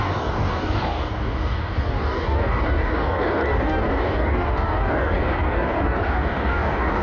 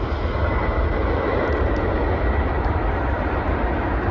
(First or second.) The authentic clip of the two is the second